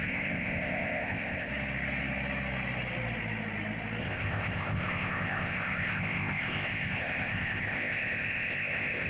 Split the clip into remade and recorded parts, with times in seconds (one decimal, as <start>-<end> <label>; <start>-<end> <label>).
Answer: 0.0-1.5 remade; 1.5-4.0 recorded; 4.0-9.1 remade